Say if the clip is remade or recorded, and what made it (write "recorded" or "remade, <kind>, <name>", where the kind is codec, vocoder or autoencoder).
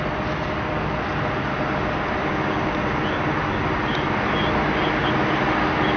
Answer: recorded